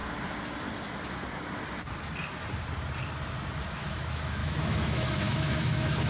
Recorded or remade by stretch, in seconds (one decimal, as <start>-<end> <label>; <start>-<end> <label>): 0.0-3.7 recorded; 3.7-6.1 remade